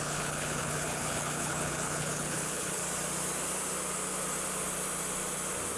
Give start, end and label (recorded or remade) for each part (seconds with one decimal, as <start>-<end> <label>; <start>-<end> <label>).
0.0-2.8 remade; 2.8-5.8 recorded